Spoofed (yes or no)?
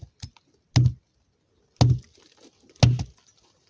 no